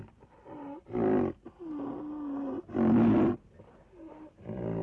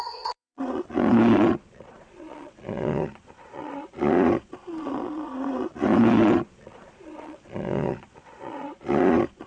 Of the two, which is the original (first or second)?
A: first